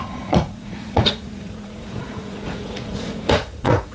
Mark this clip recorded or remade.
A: remade